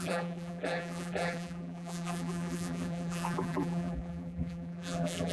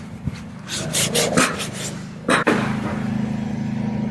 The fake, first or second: first